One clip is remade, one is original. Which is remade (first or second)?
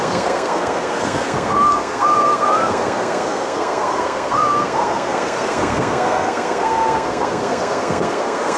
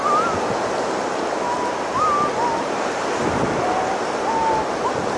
first